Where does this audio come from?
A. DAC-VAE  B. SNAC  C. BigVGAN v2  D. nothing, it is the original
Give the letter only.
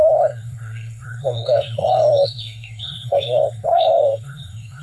B